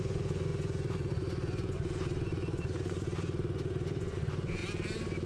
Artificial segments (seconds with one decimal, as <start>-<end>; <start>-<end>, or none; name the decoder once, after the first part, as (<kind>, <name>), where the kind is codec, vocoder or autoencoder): 0.0-4.6 (vocoder, Vocos)